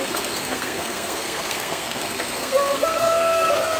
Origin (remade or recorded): remade